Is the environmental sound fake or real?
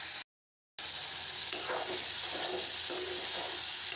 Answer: real